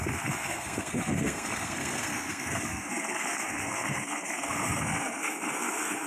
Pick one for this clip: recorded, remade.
remade